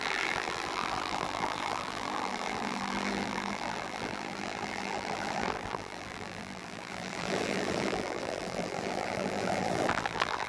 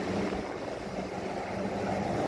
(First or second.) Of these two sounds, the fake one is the first